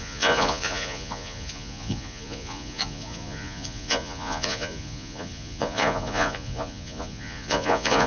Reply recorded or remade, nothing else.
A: remade